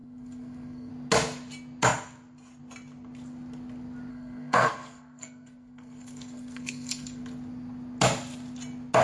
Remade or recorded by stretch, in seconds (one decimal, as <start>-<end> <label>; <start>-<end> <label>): 0.0-0.9 remade; 0.9-4.1 recorded; 4.1-7.2 remade; 7.2-9.0 recorded